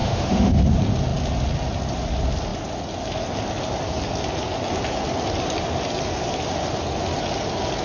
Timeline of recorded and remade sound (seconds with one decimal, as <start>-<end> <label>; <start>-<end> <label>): 0.0-0.6 remade; 0.6-7.8 recorded